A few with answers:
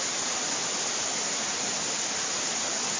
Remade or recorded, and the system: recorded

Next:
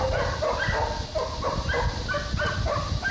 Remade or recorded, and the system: recorded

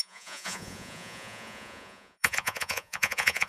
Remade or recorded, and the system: remade, vocoder, Vocos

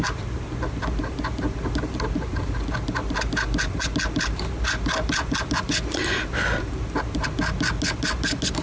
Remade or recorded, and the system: recorded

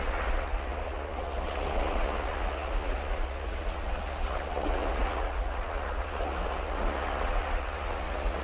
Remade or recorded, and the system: remade, vocoder, Vocos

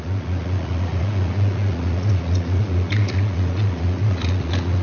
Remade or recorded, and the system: remade, vocoder, Vocos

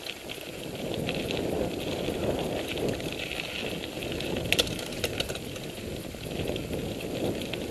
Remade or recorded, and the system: recorded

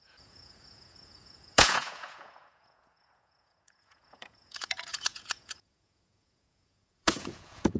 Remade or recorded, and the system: remade, vocoder, Vocos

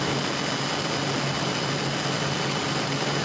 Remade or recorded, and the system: recorded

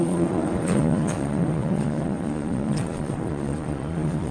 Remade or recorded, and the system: remade, vocoder, Vocos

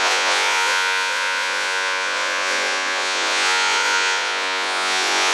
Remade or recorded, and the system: remade, vocoder, Vocos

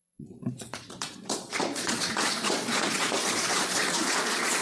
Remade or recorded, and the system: remade, vocoder, Vocos